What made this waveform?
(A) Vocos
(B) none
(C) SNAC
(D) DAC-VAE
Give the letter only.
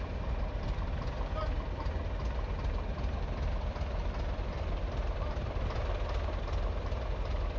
B